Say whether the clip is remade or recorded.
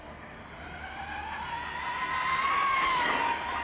recorded